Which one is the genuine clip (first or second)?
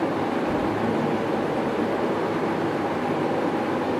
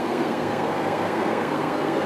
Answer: first